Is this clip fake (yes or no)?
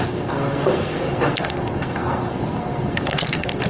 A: yes